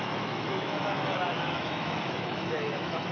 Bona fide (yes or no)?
no